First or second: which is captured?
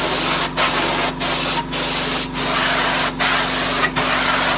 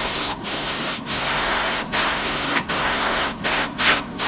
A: first